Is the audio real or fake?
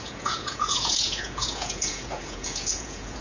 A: fake